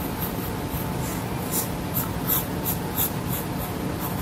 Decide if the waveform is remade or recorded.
recorded